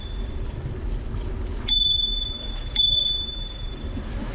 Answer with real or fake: fake